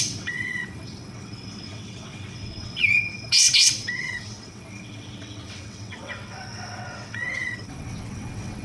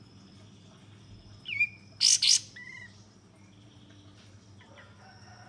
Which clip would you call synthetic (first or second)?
first